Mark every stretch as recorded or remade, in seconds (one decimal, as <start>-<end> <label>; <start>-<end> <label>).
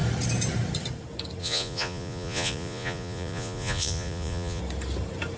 0.0-1.4 recorded; 1.4-4.6 remade; 4.6-5.4 recorded